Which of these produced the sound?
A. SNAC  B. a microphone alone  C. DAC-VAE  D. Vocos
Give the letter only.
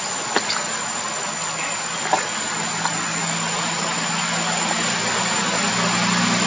B